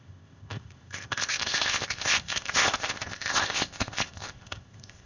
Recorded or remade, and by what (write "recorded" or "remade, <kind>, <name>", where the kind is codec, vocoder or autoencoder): remade, codec, ZipCodec